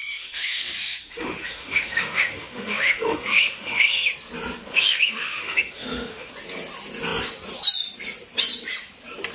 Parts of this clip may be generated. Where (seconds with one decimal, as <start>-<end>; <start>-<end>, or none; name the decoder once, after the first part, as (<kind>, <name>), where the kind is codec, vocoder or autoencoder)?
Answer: 0.0-4.1 (autoencoder, DAC-VAE); 4.7-6.3

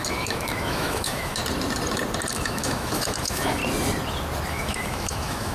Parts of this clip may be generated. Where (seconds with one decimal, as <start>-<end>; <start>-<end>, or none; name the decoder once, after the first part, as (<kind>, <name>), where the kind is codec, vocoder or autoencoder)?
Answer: 0.0-1.4 (autoencoder, DAC-VAE); 2.3-3.6; 4.5-5.5

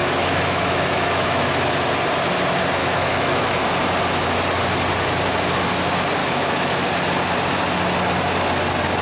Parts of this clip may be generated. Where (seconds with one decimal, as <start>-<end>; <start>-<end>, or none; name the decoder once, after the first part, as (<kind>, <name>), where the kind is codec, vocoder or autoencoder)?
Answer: 0.0-1.9 (autoencoder, DAC-VAE); 2.8-3.6; 6.2-6.9